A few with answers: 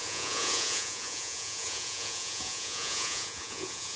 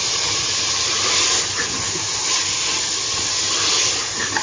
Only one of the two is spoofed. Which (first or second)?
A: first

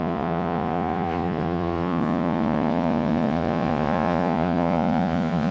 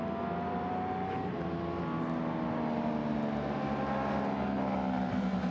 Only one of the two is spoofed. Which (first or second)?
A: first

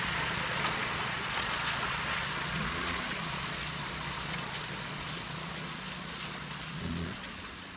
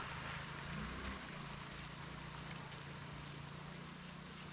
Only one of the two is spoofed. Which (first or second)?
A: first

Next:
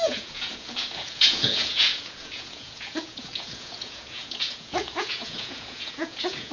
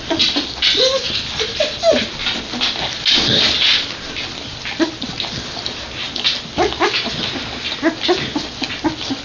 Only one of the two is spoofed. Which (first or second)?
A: first